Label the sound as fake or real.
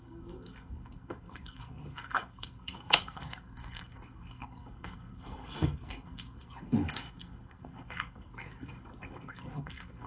fake